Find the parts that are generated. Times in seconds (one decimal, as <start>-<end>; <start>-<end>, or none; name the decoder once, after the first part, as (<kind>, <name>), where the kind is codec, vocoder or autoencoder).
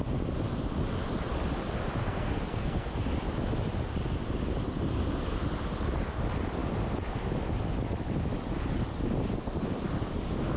2.0-2.9 (codec, SNAC)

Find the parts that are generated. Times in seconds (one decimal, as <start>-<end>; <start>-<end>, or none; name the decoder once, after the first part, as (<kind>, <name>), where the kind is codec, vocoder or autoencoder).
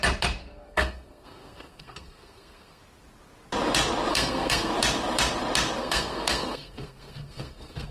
0.4-2.8 (codec, SNAC); 4.1-4.7; 5.8-7.9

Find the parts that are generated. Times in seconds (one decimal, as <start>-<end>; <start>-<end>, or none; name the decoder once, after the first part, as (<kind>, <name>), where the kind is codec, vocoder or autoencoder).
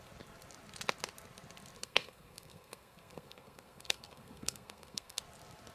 1.8-5.2 (codec, SNAC)